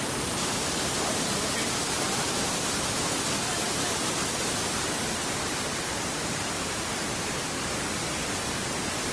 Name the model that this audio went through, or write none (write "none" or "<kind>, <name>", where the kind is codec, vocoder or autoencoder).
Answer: none